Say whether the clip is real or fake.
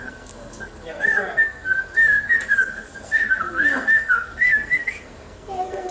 fake